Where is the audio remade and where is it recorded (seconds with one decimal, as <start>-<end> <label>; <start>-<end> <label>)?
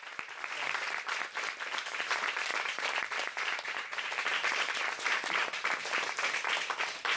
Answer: 0.0-2.5 recorded; 2.5-4.8 remade; 4.8-7.2 recorded